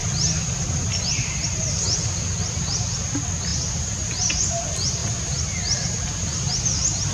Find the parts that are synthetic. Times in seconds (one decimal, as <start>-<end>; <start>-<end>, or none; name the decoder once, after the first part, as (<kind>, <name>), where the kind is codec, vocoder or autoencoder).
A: 3.5-4.6 (vocoder, BigVGAN v2); 5.0-6.5